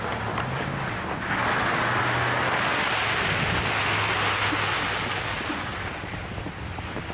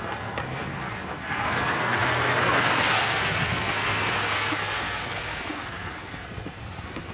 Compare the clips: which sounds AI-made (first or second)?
second